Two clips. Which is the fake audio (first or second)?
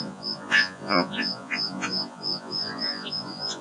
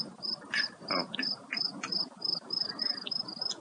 first